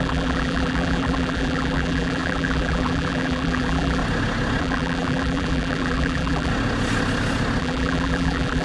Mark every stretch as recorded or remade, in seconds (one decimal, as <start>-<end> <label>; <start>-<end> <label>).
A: 0.0-4.0 remade; 4.0-4.6 recorded; 4.6-6.5 remade; 6.5-7.6 recorded; 7.6-8.6 remade